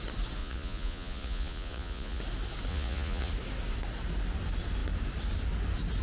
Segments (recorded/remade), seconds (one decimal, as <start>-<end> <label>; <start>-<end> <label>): 0.0-0.4 recorded; 0.4-2.2 remade; 2.2-2.7 recorded; 2.7-3.3 remade; 3.3-6.0 recorded